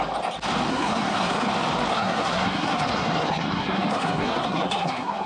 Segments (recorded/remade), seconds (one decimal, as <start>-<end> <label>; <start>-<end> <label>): 0.0-0.7 recorded; 0.7-1.5 remade; 1.5-1.9 recorded; 1.9-5.3 remade